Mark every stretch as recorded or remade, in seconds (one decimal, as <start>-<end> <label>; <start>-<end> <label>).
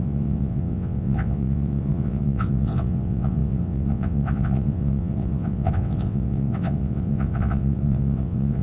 0.0-8.6 remade